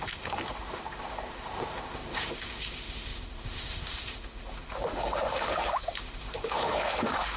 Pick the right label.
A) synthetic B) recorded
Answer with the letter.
A